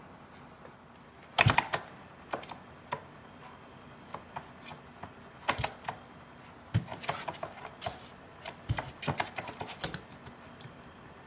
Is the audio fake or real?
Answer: real